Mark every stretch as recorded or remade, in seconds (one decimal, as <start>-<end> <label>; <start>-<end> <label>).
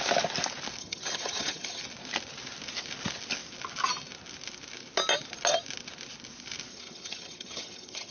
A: 0.0-0.8 recorded; 0.8-1.8 remade; 1.8-6.7 recorded; 6.7-8.1 remade